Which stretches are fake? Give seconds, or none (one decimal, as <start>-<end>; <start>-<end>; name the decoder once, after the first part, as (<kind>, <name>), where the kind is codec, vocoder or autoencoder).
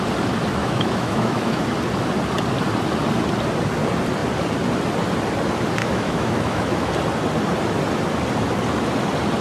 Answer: 0.6-1.6 (autoencoder, DAC-VAE); 5.8-6.9